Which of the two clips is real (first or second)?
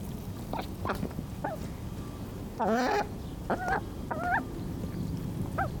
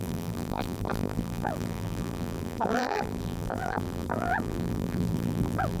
first